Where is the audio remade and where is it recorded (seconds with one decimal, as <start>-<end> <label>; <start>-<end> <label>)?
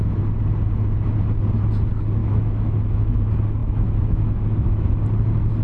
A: 0.0-2.2 recorded; 2.2-3.2 remade; 3.2-3.6 recorded; 3.6-4.9 remade; 4.9-5.6 recorded